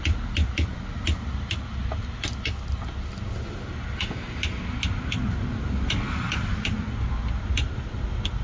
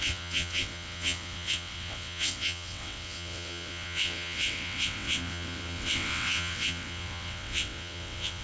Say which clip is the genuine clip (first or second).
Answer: first